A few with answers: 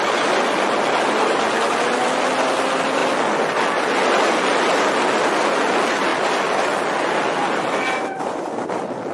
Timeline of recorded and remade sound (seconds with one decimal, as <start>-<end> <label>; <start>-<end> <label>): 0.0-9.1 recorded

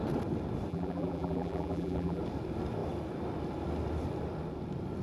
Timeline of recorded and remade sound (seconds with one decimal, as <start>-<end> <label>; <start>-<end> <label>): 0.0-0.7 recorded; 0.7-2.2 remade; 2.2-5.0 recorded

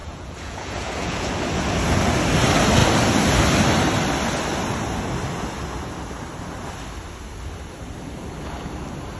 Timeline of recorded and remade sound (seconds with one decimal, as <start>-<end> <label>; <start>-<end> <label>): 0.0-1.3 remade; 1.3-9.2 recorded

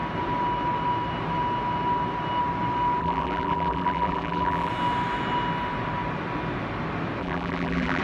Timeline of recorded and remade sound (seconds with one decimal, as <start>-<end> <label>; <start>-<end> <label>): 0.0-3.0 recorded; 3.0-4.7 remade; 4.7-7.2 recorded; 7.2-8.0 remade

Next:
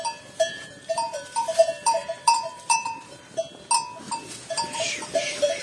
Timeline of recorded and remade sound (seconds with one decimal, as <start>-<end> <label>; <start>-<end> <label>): 0.0-3.2 remade; 3.2-4.2 recorded; 4.2-5.6 remade